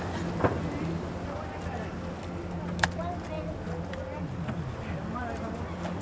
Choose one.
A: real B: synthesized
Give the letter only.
A